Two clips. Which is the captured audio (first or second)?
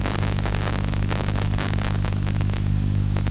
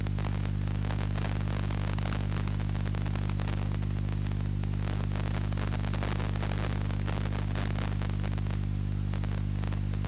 second